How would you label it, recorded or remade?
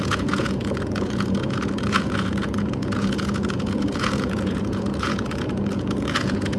remade